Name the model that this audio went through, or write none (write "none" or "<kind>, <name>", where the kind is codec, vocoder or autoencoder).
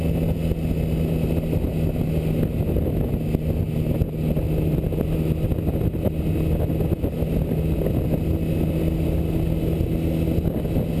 none